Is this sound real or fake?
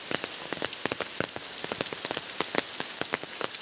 real